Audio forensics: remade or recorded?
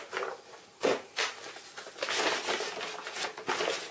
recorded